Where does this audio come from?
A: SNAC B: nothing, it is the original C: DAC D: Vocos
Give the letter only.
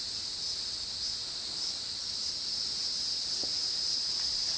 B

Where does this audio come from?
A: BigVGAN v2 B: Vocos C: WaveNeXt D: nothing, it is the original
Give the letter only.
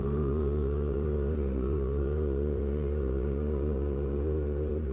B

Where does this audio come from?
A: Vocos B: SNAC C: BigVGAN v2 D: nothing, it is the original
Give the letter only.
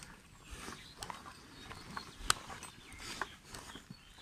D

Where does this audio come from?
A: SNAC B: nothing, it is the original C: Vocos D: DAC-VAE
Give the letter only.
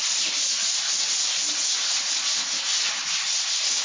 B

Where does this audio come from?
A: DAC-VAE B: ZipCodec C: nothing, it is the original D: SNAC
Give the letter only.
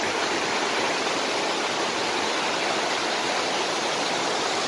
C